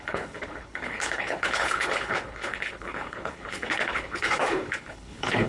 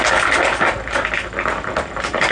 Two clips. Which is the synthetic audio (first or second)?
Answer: first